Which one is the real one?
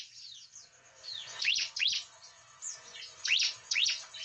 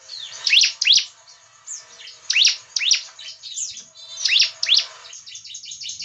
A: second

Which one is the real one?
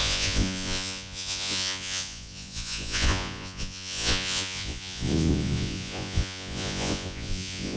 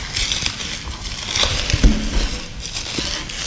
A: second